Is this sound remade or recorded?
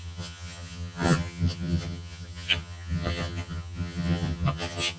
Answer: remade